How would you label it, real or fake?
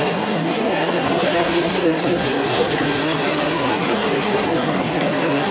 fake